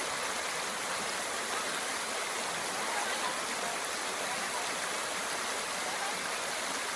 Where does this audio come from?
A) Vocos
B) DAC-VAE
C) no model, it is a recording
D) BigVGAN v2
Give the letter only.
C